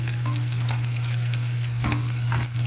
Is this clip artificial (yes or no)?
yes